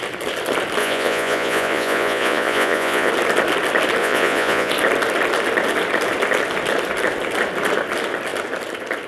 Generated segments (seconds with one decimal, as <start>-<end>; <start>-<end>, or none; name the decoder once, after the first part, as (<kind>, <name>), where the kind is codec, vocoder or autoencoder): 0.8-3.1 (vocoder, Vocos); 4.0-4.7